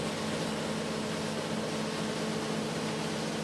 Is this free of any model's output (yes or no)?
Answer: yes